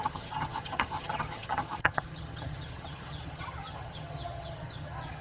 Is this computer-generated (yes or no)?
yes